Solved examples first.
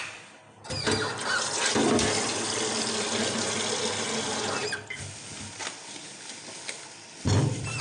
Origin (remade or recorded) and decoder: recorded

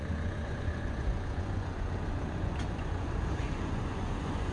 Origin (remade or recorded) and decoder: remade, vocoder, Vocos